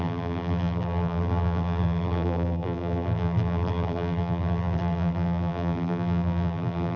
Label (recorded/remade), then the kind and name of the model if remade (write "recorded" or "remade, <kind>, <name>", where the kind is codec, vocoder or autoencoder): remade, vocoder, BigVGAN v2